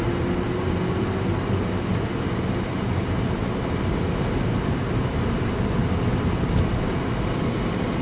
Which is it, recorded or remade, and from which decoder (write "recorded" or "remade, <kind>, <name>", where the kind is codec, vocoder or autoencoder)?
recorded